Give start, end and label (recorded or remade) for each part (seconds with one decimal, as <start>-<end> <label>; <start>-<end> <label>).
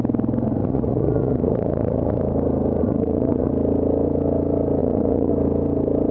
0.0-0.6 recorded; 0.6-2.2 remade; 2.2-2.8 recorded; 2.8-3.5 remade; 3.5-4.8 recorded; 4.8-5.3 remade; 5.3-6.1 recorded